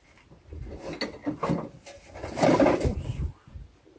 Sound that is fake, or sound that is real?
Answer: real